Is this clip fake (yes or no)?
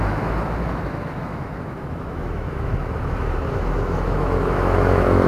yes